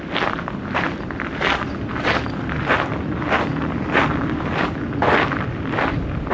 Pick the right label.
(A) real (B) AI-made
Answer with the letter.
A